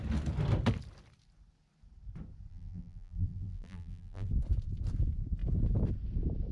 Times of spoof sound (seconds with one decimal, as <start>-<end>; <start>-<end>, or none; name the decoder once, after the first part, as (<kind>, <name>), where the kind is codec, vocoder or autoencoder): 2.5-4.3 (vocoder, BigVGAN v2)